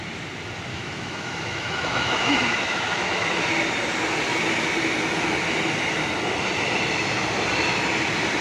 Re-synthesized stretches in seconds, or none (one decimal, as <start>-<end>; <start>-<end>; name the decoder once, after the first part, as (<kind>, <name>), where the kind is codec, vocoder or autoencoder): 0.7-3.4 (autoencoder, DAC-VAE)